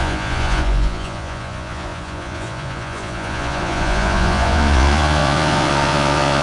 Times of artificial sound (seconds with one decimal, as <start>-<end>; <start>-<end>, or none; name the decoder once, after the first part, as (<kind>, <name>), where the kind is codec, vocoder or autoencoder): 0.0-6.4 (vocoder, Vocos)